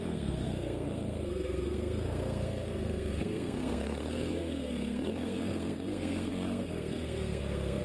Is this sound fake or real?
fake